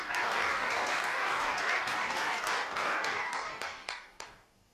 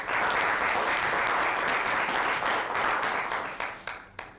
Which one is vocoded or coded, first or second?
first